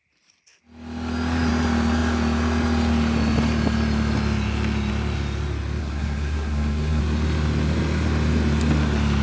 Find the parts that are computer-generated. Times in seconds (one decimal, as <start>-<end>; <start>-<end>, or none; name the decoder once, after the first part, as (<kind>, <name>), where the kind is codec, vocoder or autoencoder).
5.8-7.0 (codec, SNAC)